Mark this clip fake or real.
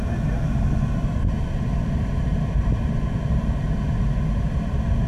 real